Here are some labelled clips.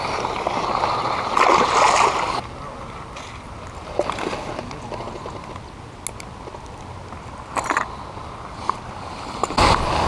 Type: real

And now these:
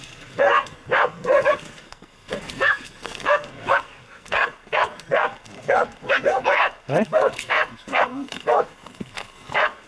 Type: fake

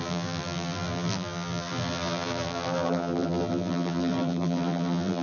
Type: fake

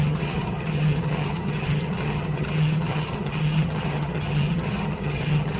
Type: fake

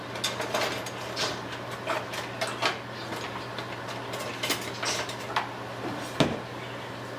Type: real